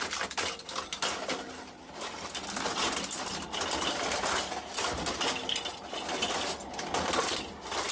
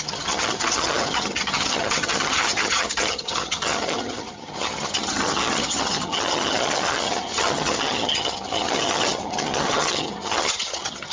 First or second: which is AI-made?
second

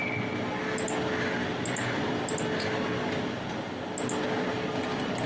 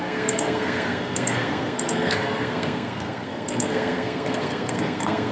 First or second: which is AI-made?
second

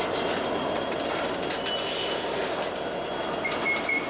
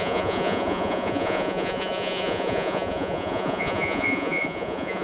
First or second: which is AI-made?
second